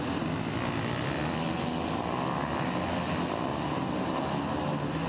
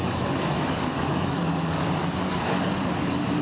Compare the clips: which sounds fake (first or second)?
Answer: second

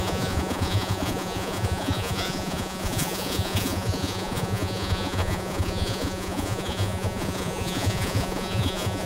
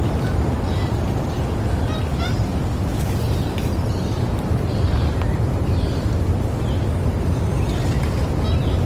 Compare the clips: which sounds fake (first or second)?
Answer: first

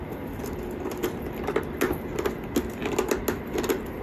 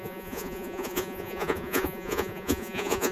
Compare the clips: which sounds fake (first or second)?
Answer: second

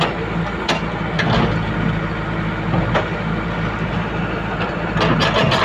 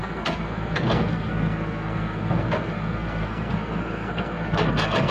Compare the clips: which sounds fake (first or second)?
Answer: second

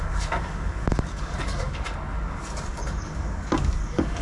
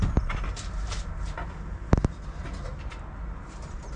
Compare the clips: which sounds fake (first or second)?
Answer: first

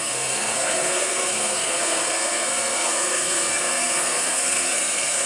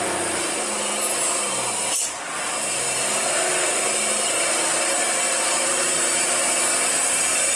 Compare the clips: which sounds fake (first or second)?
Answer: first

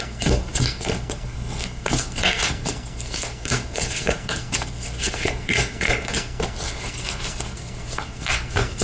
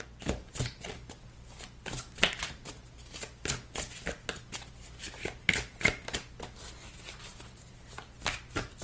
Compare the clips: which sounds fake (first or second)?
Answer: first